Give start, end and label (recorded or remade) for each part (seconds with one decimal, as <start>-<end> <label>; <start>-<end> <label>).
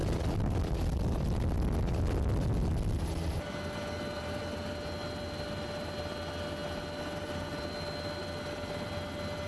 0.0-9.5 recorded